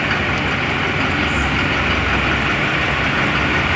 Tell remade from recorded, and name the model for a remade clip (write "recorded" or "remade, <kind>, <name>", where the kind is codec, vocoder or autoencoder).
recorded